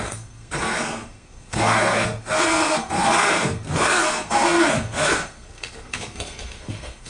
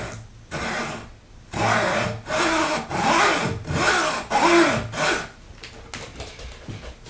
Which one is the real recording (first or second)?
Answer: second